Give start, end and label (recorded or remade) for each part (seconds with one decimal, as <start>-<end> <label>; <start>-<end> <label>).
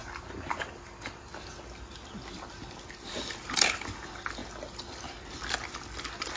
0.0-6.4 recorded